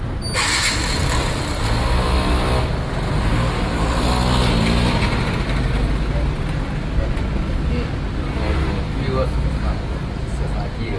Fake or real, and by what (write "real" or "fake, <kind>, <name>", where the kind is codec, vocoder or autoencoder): real